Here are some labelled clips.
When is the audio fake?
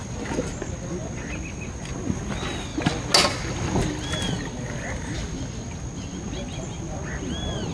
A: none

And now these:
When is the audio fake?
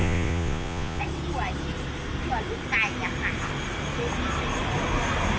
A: 0.0-1.0 (vocoder, Vocos)